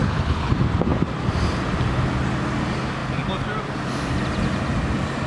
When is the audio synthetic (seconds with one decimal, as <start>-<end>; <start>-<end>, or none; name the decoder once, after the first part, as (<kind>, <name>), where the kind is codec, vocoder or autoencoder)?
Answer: 0.0-0.5 (codec, HILCodec)